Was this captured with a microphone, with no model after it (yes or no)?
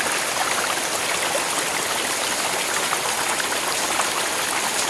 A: yes